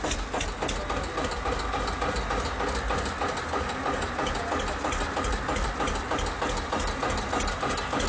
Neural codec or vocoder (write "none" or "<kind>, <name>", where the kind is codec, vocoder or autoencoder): none